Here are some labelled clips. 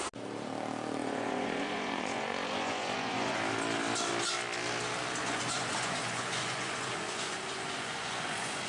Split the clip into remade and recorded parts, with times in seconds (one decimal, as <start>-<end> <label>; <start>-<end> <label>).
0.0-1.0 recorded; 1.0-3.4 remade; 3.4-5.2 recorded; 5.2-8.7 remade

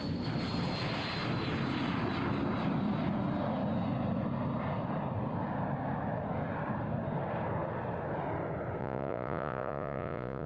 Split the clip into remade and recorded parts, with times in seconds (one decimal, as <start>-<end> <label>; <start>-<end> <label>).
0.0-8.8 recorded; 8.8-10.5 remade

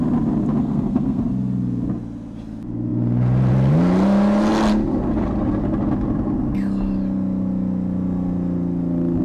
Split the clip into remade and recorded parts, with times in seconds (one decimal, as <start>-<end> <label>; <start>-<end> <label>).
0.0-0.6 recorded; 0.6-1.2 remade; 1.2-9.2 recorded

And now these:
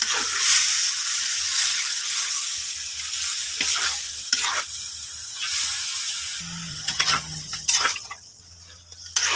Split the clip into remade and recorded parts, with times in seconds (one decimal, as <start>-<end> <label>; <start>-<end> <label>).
0.0-1.7 recorded; 1.7-2.3 remade; 2.3-6.7 recorded; 6.7-8.4 remade; 8.4-9.4 recorded

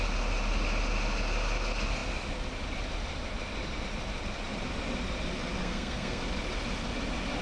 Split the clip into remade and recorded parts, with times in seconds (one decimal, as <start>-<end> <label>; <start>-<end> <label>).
0.0-5.6 recorded; 5.6-6.2 remade; 6.2-7.4 recorded

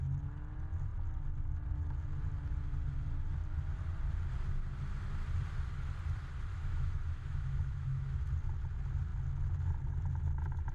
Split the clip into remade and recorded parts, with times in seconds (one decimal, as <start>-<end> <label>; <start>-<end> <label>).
0.0-6.5 recorded; 6.5-8.2 remade; 8.2-10.7 recorded